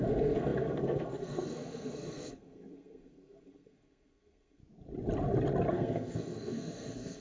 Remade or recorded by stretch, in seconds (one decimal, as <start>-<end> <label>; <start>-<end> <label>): 0.0-4.6 remade; 4.6-5.7 recorded; 5.7-7.2 remade